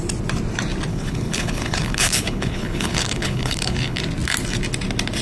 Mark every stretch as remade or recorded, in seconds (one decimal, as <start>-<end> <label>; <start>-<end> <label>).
0.0-0.9 recorded; 0.9-4.0 remade; 4.0-5.2 recorded